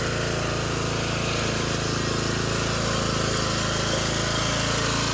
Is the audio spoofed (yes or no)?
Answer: no